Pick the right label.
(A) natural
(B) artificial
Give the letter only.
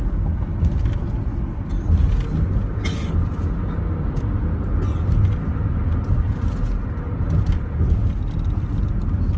A